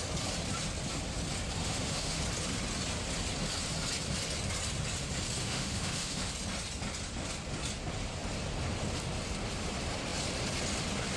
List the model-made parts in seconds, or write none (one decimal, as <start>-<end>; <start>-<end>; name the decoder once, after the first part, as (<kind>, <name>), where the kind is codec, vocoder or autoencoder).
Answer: 1.6-2.2 (autoencoder, DAC-VAE); 5.4-6.3